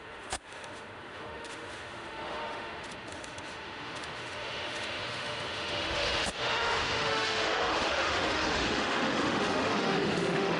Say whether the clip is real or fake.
fake